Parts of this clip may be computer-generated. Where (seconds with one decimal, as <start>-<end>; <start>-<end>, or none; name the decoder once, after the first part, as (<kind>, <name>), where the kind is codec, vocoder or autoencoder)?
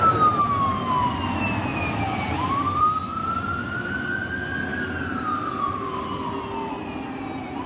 1.7-2.8 (vocoder, BigVGAN v2); 4.7-6.3